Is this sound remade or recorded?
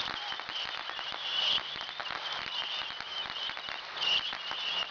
recorded